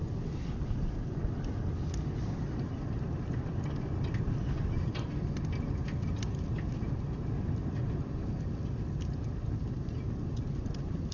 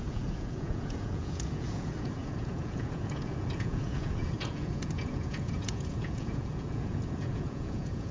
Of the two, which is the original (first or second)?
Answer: first